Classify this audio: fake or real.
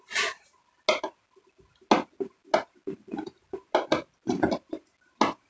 real